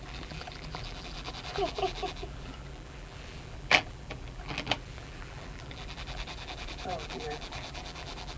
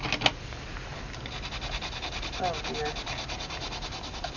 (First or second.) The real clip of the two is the second